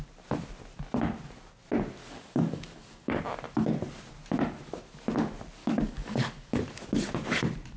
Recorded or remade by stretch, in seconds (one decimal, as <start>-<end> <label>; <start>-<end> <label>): 0.0-2.0 recorded; 2.0-3.2 remade; 3.2-5.6 recorded; 5.6-6.6 remade; 6.6-7.8 recorded